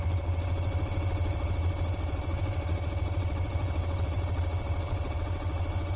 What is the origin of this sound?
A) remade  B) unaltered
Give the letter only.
A